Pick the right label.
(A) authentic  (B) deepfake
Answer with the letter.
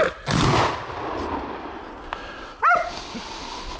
A